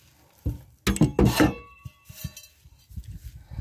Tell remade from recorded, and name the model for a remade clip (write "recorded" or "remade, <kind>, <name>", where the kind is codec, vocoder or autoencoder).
recorded